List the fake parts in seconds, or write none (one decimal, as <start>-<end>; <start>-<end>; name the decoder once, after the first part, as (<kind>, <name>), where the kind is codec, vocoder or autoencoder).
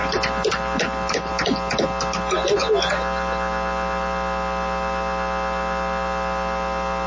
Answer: none